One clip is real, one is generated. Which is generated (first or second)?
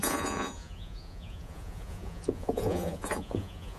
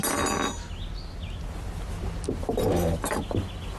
first